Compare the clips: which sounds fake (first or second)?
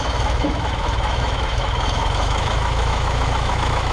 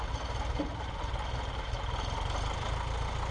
first